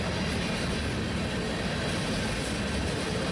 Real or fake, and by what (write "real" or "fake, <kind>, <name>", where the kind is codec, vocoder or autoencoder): real